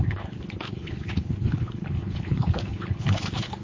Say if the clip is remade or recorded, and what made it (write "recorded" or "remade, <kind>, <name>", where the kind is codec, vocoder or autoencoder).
remade, codec, HILCodec